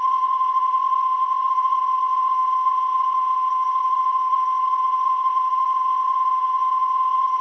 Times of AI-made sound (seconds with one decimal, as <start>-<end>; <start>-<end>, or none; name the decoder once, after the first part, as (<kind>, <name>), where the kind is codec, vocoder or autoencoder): 0.0-7.4 (vocoder, HiFi-GAN)